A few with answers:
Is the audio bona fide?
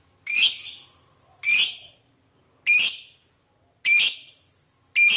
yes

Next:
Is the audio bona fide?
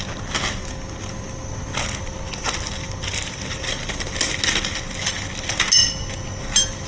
yes